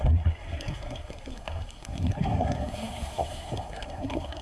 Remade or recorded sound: remade